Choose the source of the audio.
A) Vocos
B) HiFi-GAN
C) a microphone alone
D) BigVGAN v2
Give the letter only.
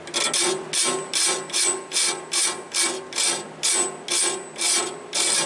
C